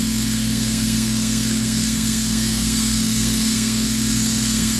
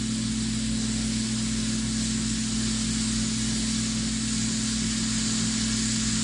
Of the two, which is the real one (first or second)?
second